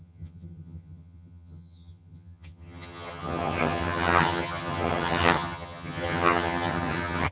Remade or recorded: remade